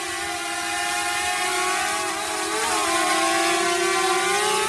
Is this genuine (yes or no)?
yes